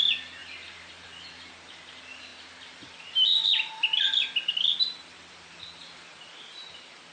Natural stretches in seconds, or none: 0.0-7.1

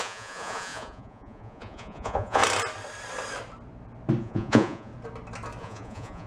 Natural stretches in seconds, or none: 2.4-4.2; 4.9-5.6

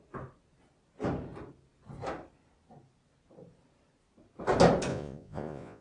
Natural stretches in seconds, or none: 0.0-4.9

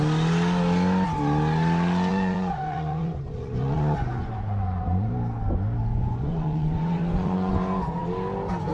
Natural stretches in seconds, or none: 0.0-2.1; 5.1-5.9; 7.5-8.7